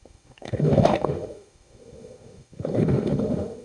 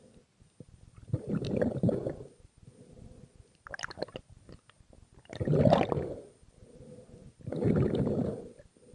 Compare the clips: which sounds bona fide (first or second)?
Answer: second